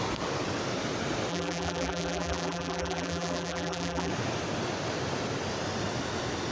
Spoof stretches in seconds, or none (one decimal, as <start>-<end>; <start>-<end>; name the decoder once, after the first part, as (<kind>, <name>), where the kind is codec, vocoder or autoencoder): 1.3-4.1 (vocoder, BigVGAN v2)